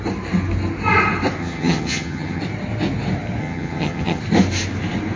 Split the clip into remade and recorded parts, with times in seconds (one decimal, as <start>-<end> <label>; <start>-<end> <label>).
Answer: 0.0-1.4 recorded; 1.4-2.4 remade; 2.4-3.4 recorded; 3.4-4.2 remade; 4.2-5.2 recorded